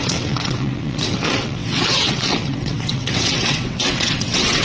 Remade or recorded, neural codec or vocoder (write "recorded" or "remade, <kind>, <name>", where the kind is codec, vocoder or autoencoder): remade, vocoder, WaveNeXt